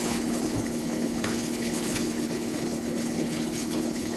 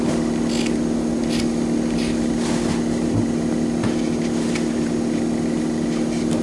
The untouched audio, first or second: second